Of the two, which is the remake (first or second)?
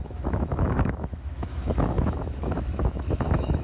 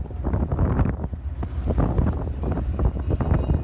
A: first